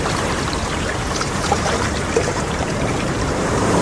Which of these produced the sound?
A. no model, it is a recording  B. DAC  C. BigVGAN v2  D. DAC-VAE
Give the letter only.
C